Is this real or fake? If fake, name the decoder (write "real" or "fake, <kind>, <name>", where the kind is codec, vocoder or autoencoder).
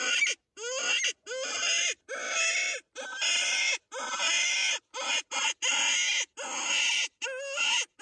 real